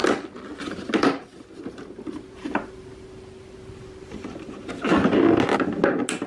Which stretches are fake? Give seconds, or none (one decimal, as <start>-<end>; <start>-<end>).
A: 0.0-3.8